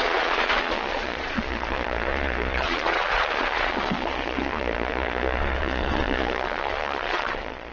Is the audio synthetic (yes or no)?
yes